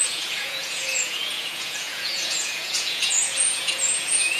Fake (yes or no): yes